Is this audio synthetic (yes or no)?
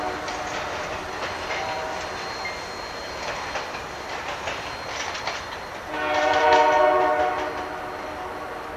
no